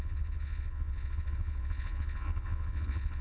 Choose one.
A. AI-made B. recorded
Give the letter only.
A